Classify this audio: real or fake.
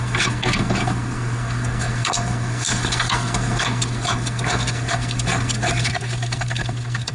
fake